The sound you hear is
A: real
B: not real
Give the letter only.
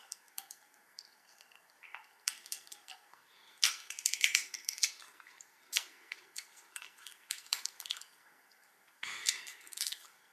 B